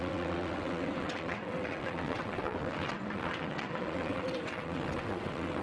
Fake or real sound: fake